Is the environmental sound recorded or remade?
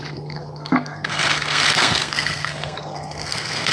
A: remade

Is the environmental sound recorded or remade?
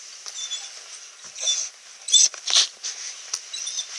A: recorded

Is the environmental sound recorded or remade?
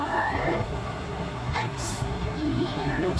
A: remade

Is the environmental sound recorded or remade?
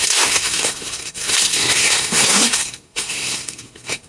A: remade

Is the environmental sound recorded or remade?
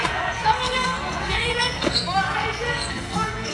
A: remade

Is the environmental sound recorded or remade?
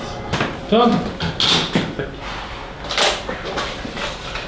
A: recorded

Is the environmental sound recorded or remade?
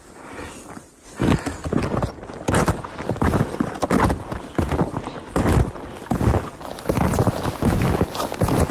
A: recorded